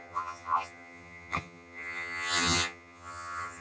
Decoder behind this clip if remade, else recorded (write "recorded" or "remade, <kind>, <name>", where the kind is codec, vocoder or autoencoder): remade, vocoder, HiFi-GAN